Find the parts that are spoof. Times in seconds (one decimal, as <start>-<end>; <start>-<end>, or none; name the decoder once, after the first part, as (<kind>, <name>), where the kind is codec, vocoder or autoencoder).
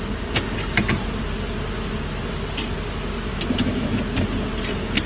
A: 3.3-4.0 (autoencoder, DAC-VAE)